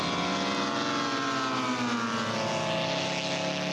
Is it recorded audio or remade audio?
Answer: recorded